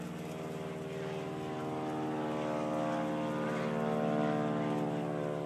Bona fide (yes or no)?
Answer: yes